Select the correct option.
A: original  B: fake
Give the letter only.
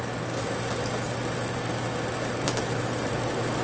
A